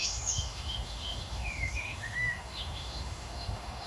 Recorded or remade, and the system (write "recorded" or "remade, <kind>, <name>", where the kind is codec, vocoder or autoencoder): remade, autoencoder, DAC-VAE